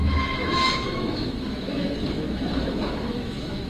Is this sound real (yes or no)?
no